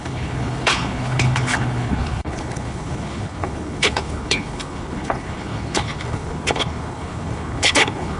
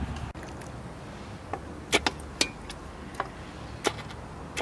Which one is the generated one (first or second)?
first